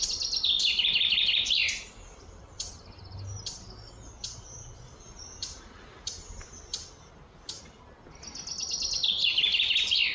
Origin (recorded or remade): recorded